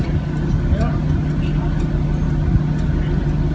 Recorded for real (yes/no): yes